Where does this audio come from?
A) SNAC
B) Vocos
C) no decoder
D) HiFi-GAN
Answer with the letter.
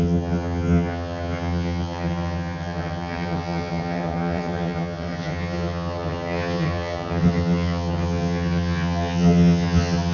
D